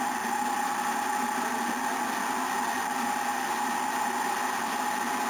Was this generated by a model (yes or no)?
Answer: no